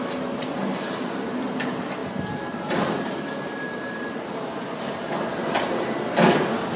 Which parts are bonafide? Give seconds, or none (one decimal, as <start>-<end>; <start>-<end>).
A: 0.0-0.7; 1.3-2.0; 5.9-6.8